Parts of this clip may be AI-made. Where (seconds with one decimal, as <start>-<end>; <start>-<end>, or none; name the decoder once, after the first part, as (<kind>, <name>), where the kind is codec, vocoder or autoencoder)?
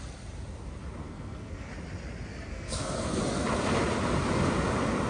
1.0-1.7 (codec, SNAC); 2.3-3.2